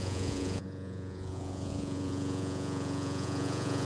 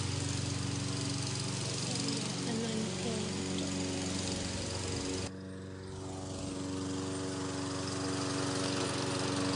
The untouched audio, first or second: second